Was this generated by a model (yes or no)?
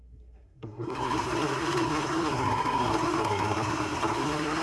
yes